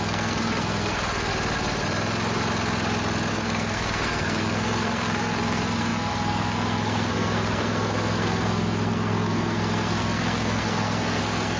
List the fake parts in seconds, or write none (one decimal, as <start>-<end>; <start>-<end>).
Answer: 0.0-1.3; 3.3-11.6